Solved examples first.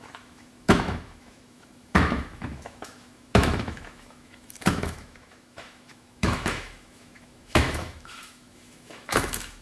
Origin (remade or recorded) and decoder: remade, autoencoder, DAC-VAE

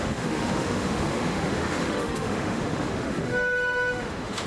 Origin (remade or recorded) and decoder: remade, autoencoder, DAC-VAE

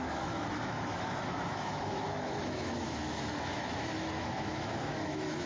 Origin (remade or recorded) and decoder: remade, autoencoder, DAC-VAE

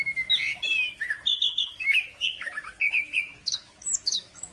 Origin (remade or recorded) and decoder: remade, autoencoder, DAC-VAE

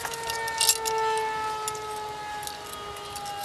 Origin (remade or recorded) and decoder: recorded